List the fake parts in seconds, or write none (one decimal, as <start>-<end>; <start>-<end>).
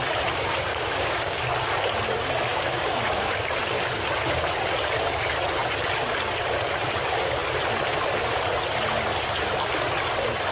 0.7-1.4; 2.5-3.6